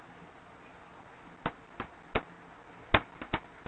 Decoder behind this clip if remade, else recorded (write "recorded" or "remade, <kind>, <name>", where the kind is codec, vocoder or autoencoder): recorded